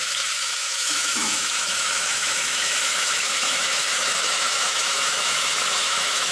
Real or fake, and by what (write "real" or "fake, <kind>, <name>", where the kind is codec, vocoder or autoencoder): fake, autoencoder, DAC-VAE